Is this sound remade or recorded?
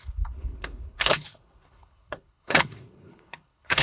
remade